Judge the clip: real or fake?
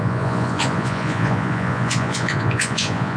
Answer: fake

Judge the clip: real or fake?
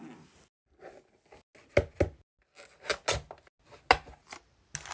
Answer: real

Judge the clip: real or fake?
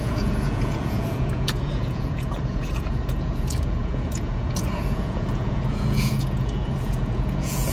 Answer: fake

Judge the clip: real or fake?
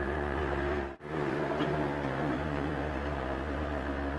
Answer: fake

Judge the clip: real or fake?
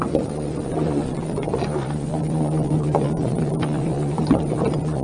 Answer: fake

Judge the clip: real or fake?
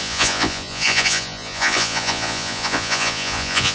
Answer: fake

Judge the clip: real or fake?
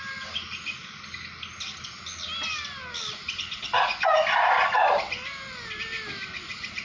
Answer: real